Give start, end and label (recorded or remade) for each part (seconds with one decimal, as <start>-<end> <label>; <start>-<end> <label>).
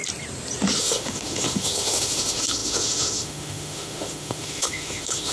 0.0-0.8 recorded; 0.8-5.3 remade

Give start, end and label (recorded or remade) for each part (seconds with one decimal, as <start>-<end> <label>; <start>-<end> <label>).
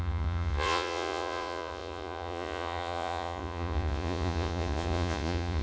0.0-5.6 remade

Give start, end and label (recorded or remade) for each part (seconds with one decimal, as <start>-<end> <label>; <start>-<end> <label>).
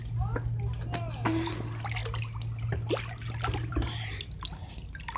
0.0-5.2 recorded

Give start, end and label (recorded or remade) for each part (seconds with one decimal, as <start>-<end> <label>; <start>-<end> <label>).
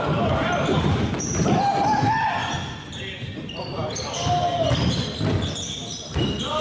0.0-0.7 recorded; 0.7-2.0 remade; 2.0-6.6 recorded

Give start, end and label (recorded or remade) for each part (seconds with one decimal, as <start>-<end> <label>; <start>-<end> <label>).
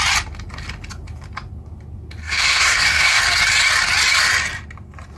0.0-2.2 recorded; 2.2-3.2 remade; 3.2-5.2 recorded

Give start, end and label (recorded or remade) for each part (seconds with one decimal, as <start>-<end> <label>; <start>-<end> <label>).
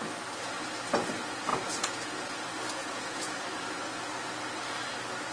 0.0-1.5 recorded; 1.5-2.3 remade; 2.3-2.8 recorded; 2.8-3.4 remade; 3.4-5.3 recorded